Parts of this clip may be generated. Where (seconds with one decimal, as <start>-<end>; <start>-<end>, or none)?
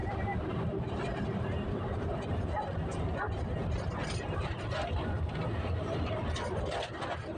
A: 0.0-2.2; 3.6-4.6